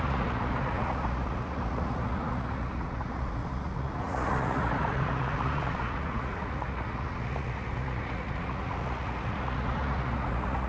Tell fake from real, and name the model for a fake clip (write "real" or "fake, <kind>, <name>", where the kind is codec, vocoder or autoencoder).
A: fake, vocoder, Vocos